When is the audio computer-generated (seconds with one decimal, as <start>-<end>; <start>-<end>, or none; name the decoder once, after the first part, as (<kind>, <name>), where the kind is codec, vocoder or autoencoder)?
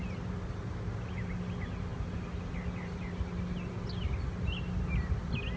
none